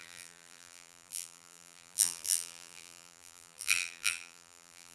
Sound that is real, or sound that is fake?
fake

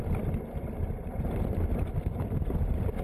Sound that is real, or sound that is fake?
real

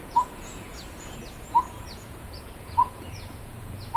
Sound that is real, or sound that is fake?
fake